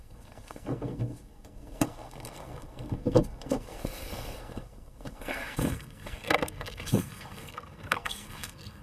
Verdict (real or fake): fake